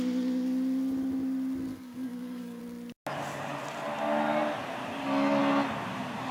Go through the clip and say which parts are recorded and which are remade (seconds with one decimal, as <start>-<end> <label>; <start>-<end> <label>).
0.0-1.7 recorded; 1.7-2.6 remade; 2.6-6.3 recorded